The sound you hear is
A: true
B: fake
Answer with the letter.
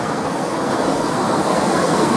B